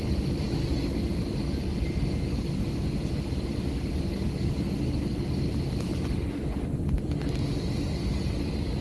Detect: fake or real real